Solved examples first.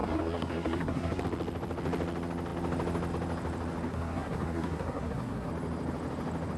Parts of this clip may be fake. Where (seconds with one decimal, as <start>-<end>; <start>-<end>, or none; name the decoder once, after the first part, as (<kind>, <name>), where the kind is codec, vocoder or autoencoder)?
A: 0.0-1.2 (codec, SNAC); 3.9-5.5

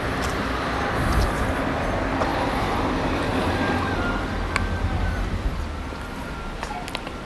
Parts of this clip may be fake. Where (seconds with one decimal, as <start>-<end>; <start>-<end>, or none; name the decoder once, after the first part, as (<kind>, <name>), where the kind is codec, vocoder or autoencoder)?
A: none

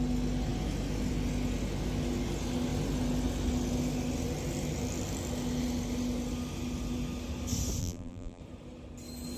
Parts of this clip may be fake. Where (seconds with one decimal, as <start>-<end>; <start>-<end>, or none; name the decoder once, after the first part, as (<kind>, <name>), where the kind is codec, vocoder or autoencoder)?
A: 7.8-8.4 (vocoder, BigVGAN v2)

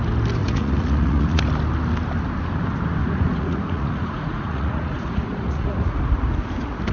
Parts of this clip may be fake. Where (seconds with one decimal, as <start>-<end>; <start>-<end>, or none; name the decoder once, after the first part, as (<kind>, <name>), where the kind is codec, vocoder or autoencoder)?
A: 0.4-1.4 (vocoder, Vocos); 3.0-6.0